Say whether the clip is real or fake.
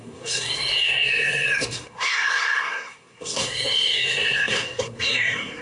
fake